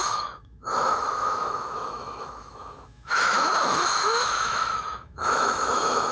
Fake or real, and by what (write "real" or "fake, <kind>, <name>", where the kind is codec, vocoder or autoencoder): fake, autoencoder, DAC-VAE